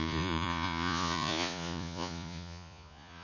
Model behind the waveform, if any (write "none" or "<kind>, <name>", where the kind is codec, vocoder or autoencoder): vocoder, Vocos